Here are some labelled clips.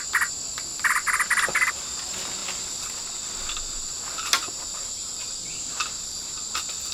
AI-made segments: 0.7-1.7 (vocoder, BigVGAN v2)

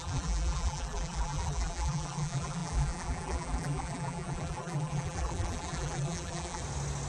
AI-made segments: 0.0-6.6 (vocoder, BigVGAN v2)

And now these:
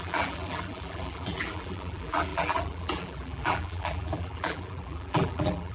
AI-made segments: 0.0-5.7 (vocoder, BigVGAN v2)

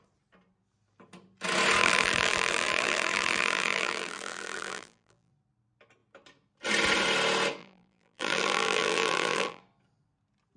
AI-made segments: 1.8-5.3 (vocoder, BigVGAN v2); 7.6-9.6

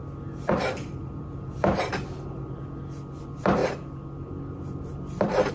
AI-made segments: 0.5-1.9 (vocoder, BigVGAN v2); 3.2-3.6; 4.6-5.5

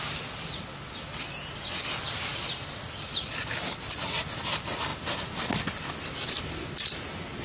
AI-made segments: none

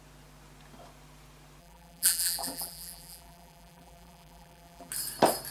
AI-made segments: 1.6-4.9 (vocoder, BigVGAN v2)

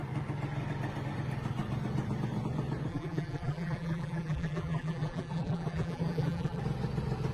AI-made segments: 2.9-6.6 (vocoder, BigVGAN v2)